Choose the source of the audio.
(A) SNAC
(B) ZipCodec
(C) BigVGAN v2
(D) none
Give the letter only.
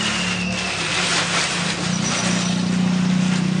D